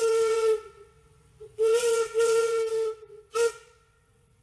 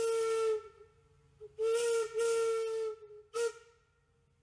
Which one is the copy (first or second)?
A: first